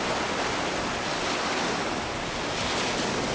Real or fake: real